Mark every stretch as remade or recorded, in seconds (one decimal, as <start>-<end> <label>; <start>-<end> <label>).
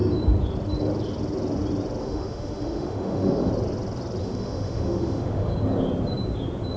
0.0-2.0 recorded; 2.0-3.5 remade; 3.5-4.2 recorded; 4.2-5.5 remade; 5.5-6.8 recorded